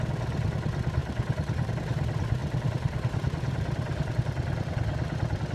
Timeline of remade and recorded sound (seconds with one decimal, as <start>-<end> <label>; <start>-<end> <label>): 0.0-1.0 recorded; 1.0-1.7 remade; 1.7-2.4 recorded; 2.4-4.1 remade; 4.1-5.5 recorded